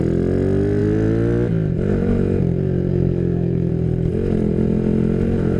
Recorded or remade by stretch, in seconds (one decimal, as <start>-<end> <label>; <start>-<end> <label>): 0.0-2.9 recorded; 2.9-3.7 remade; 3.7-5.6 recorded